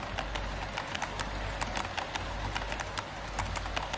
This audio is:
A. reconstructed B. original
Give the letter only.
B